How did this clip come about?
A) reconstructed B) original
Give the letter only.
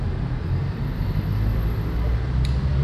B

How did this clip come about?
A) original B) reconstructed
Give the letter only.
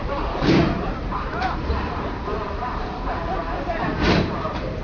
B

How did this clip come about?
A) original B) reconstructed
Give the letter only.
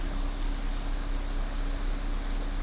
A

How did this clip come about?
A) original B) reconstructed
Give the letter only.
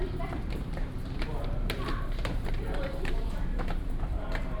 B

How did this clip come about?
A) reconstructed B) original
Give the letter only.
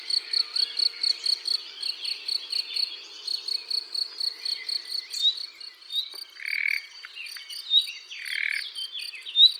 B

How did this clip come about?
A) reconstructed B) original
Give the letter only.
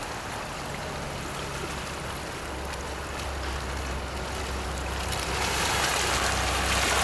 B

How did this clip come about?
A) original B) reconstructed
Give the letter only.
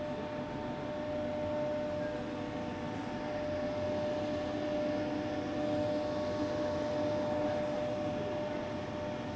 A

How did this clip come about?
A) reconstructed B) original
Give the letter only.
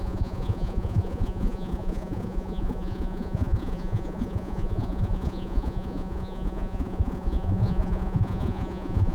A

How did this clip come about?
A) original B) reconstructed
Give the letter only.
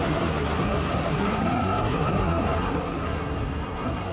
B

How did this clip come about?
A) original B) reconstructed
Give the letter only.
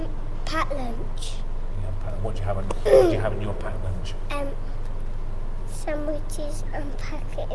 A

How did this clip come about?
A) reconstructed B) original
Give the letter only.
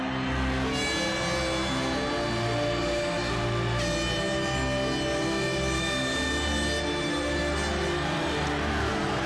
B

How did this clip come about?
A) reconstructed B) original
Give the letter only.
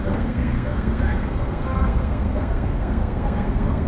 A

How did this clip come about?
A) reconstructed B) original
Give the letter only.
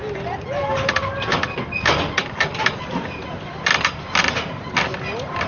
B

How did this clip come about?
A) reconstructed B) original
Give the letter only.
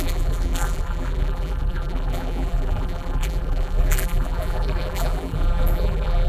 A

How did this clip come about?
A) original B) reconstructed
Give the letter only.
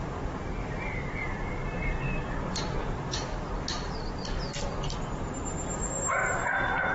A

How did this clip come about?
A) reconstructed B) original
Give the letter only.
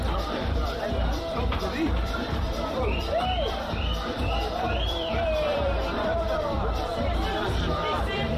A